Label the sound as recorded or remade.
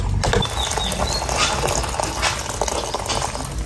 recorded